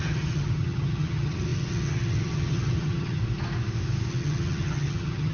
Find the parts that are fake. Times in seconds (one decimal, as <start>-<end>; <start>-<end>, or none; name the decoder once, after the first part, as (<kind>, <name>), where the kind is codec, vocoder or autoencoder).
0.0-3.2 (vocoder, HiFi-GAN); 4.1-5.3